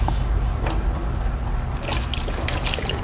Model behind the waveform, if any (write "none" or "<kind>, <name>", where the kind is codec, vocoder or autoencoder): none